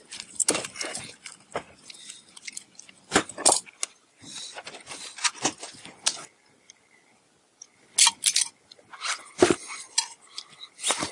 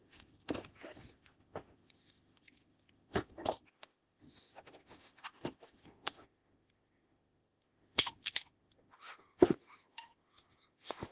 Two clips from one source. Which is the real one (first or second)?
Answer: first